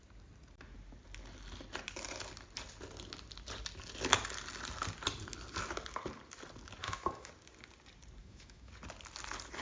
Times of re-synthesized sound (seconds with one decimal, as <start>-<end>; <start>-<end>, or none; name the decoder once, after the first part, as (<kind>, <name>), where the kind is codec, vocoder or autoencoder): 6.8-7.3 (autoencoder, DAC-VAE); 8.2-8.7